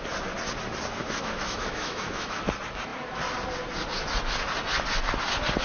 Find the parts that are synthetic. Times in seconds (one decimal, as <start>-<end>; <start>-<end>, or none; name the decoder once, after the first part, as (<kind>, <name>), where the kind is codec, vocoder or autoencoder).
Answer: 1.0-2.4 (autoencoder, DAC-VAE)